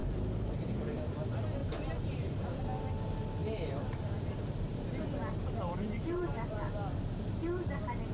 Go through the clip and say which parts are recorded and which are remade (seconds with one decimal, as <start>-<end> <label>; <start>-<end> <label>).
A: 0.0-1.6 recorded; 1.6-2.6 remade; 2.6-3.4 recorded; 3.4-6.6 remade; 6.6-8.1 recorded